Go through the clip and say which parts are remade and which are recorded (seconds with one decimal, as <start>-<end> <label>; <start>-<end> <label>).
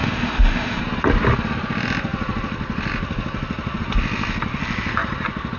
0.0-0.8 remade; 0.8-5.6 recorded